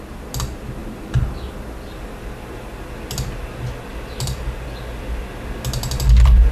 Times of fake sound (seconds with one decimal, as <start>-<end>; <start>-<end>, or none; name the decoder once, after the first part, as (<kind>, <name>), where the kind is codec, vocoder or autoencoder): none